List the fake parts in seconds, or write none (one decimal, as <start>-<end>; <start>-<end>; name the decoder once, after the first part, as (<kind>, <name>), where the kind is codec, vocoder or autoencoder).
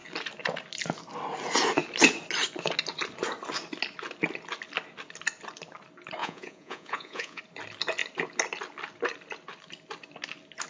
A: 6.2-7.4 (vocoder, Vocos)